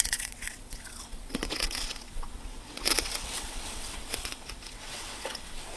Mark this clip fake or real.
fake